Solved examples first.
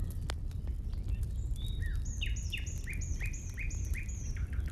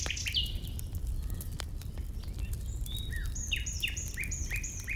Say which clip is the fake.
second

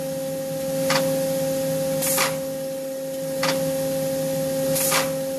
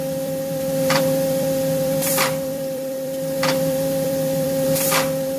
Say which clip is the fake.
second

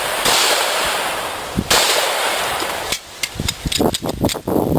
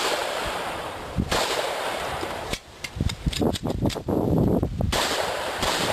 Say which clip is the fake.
second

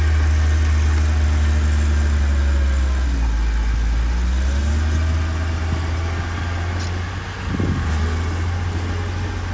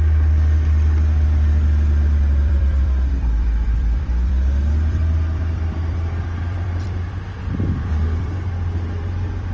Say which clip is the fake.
second